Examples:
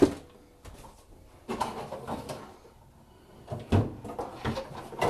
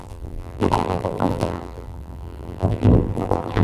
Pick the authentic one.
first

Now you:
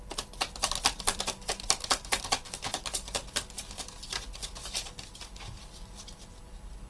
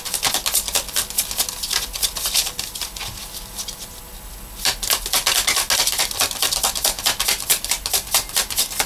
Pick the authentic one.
second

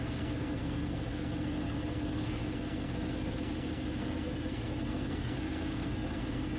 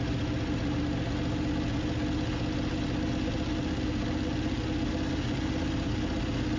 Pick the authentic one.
second